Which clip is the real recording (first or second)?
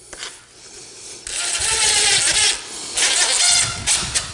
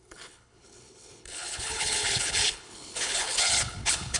first